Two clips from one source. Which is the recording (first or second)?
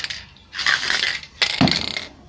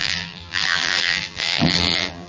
first